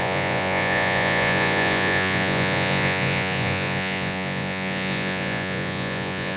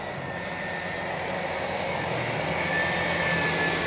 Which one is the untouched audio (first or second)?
second